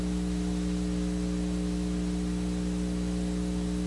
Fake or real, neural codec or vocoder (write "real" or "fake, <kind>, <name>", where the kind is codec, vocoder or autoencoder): real